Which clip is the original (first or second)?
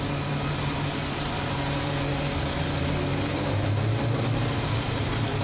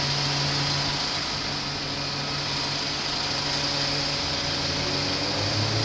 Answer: second